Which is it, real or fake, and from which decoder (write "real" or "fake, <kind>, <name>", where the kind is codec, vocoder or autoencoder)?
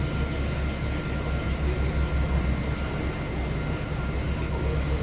real